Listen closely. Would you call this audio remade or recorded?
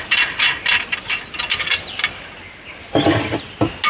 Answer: recorded